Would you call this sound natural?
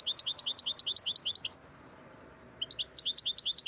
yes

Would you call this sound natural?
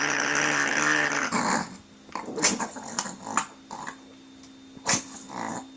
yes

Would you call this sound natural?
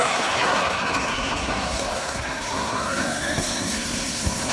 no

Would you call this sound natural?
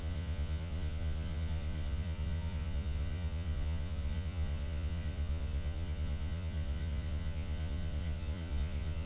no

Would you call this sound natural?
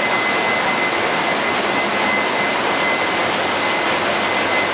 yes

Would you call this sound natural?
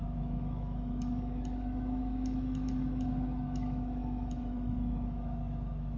no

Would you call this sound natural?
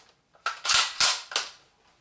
yes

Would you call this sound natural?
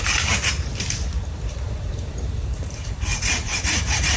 no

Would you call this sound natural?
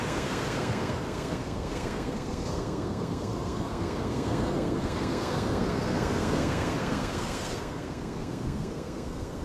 no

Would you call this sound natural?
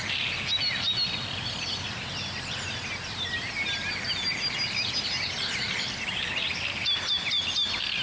yes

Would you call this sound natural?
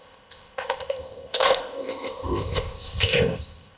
no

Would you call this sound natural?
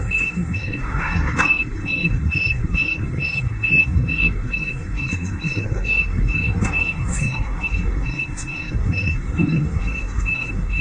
no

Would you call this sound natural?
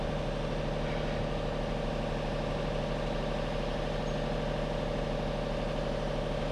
yes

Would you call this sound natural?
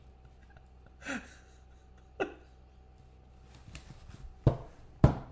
yes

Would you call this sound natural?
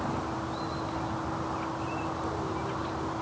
yes